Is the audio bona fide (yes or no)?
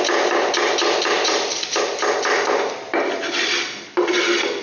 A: no